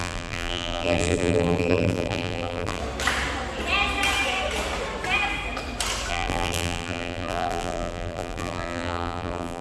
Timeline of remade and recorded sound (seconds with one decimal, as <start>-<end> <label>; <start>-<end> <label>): 0.0-2.8 remade; 2.8-6.1 recorded; 6.1-9.6 remade